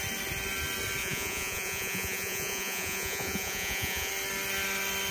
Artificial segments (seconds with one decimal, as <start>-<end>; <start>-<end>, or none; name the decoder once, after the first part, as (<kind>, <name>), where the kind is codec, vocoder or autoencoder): 1.0-4.1 (vocoder, Vocos)